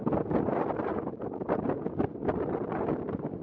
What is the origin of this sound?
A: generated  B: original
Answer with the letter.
B